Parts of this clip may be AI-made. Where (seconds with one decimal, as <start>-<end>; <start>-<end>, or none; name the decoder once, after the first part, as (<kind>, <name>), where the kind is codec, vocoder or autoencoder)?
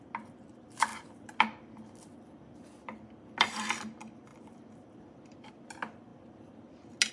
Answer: none